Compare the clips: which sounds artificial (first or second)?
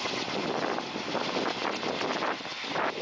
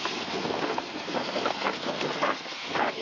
second